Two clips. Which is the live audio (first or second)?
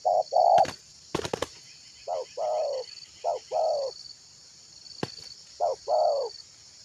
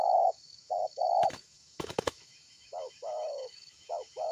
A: first